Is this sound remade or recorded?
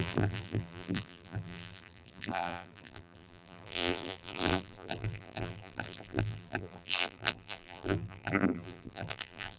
remade